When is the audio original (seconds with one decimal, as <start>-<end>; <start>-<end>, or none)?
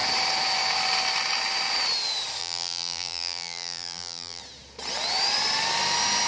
0.0-2.4; 4.4-6.3